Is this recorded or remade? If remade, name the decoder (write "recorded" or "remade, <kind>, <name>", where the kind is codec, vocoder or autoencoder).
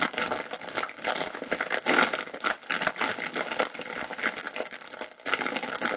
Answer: recorded